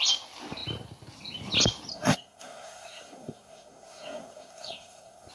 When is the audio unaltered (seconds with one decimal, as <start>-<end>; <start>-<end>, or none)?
0.0-1.9